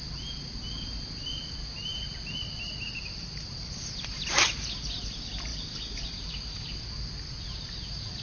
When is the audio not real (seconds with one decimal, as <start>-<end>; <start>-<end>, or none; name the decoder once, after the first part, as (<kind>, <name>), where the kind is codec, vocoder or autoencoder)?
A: none